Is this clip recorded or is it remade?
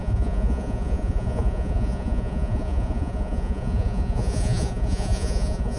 remade